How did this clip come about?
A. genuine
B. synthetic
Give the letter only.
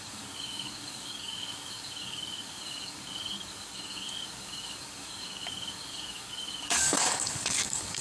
B